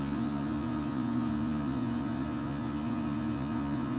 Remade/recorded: remade